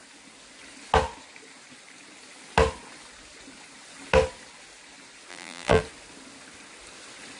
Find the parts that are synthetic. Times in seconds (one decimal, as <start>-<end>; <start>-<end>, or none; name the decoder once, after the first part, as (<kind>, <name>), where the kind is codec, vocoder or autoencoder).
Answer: 5.3-5.8 (vocoder, BigVGAN v2)